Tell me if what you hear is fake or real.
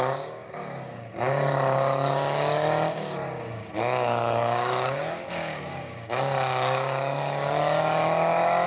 fake